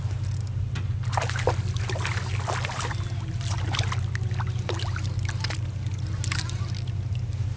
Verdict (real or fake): real